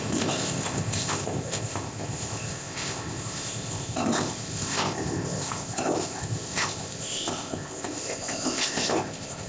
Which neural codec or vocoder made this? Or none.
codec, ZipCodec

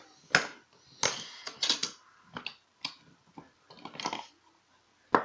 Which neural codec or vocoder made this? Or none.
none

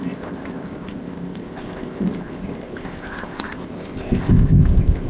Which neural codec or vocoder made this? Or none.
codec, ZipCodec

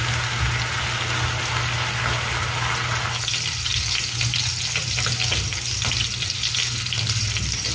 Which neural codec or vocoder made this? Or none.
none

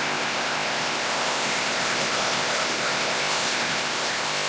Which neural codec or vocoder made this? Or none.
codec, ZipCodec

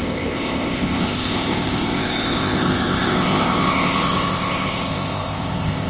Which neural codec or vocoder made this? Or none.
codec, ZipCodec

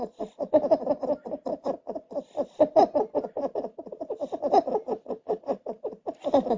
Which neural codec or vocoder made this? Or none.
none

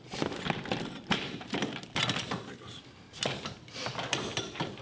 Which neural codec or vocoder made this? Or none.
none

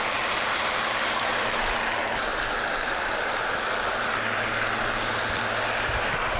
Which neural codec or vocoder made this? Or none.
none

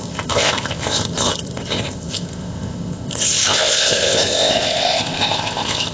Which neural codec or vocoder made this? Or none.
codec, ZipCodec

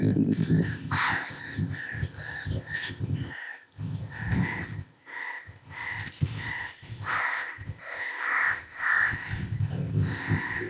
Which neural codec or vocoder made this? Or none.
codec, ZipCodec